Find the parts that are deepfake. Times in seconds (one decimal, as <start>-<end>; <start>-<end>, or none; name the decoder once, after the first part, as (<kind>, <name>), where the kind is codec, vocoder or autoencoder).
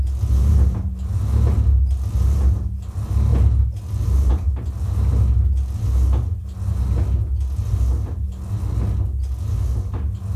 none